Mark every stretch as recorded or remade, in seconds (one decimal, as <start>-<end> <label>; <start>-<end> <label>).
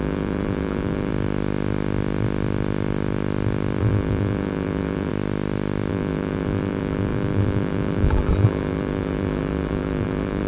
0.0-1.1 remade; 1.1-3.8 recorded; 3.8-5.1 remade; 5.1-5.9 recorded; 5.9-10.5 remade